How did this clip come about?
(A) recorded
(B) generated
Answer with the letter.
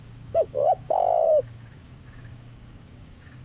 B